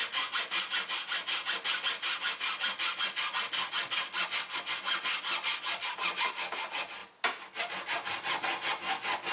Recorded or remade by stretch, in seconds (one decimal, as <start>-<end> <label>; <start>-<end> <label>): 0.0-9.3 recorded